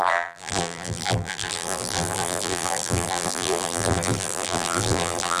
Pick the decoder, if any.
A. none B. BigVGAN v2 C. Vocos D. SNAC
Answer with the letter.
B